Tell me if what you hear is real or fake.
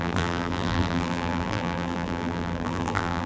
fake